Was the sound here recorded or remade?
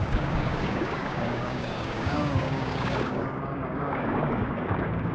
remade